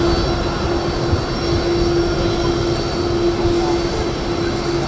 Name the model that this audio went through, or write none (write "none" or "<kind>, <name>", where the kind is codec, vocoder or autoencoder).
none